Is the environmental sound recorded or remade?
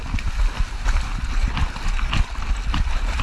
recorded